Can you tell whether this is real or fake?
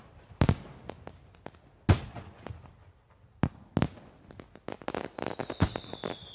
real